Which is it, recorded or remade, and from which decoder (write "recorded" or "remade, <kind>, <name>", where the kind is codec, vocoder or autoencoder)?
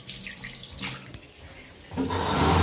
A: recorded